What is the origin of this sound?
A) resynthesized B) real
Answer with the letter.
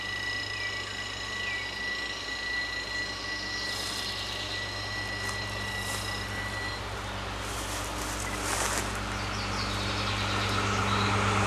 B